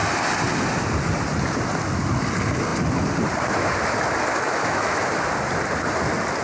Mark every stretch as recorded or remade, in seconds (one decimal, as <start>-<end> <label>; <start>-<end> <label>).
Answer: 0.0-4.3 recorded; 4.3-5.0 remade; 5.0-6.4 recorded